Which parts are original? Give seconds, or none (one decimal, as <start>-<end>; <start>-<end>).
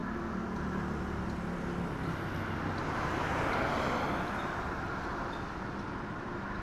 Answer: 0.0-6.6